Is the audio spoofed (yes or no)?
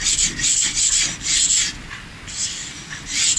no